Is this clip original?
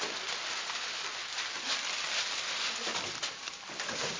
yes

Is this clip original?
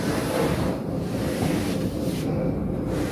yes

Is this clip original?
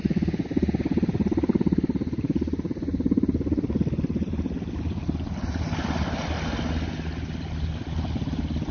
yes